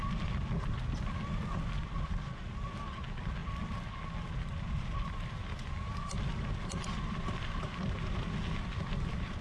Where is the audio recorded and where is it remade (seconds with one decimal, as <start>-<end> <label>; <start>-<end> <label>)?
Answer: 0.0-9.4 recorded